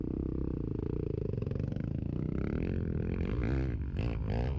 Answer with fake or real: real